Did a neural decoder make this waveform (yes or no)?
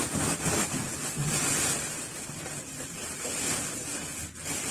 no